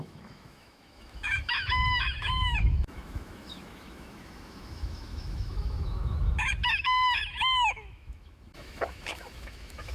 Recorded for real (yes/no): no